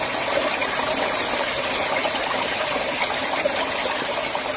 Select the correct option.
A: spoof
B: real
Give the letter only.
B